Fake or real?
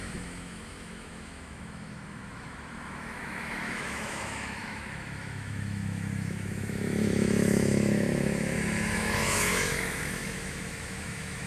fake